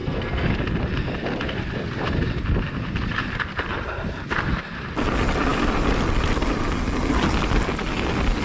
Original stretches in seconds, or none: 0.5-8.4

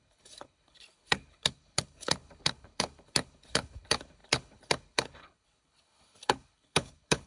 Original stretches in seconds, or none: none

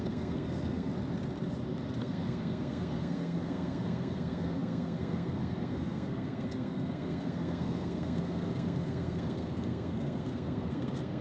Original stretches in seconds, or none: 0.9-2.0

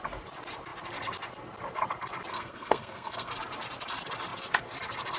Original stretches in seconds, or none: 0.0-2.3; 3.3-5.2

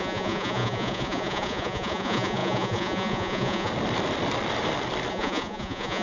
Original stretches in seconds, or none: 3.7-5.1